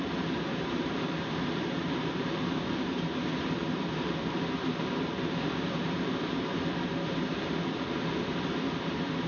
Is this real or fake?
fake